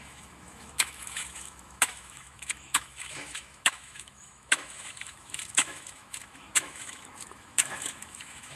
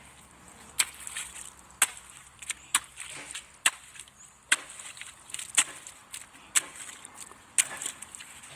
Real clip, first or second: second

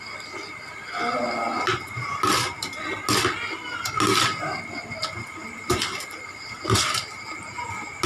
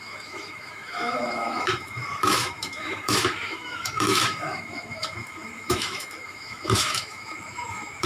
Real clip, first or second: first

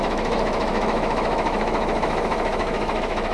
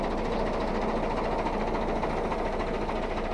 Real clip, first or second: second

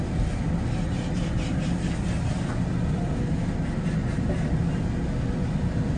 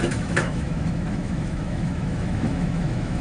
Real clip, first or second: first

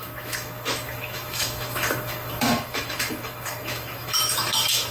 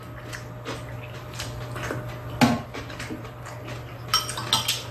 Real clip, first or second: second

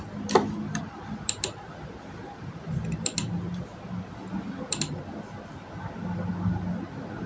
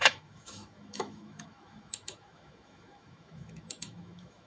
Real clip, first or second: first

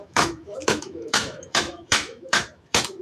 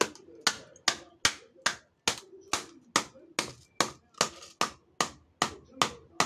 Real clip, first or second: second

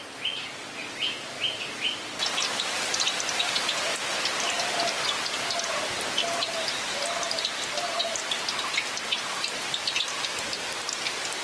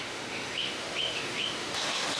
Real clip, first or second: first